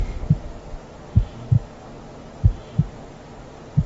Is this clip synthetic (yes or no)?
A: no